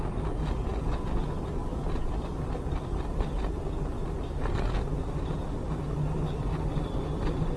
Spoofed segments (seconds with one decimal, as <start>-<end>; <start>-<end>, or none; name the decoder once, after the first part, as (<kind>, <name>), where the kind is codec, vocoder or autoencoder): 4.9-7.6 (vocoder, BigVGAN v2)